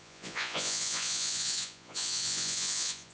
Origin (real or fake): fake